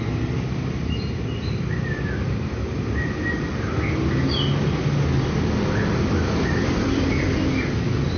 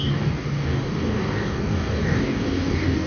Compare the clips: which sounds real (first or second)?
first